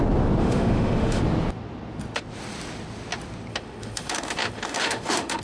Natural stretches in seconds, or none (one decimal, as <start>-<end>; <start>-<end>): 0.0-0.4; 1.2-3.5